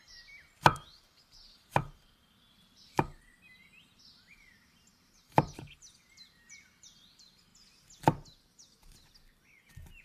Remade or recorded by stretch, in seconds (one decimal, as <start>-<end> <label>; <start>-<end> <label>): 0.0-7.5 remade; 7.5-10.0 recorded